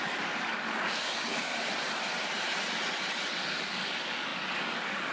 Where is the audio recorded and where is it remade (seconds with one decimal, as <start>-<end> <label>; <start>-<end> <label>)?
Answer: 0.0-1.5 remade; 1.5-3.4 recorded; 3.4-5.1 remade